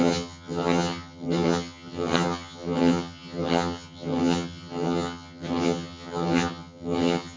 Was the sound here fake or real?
fake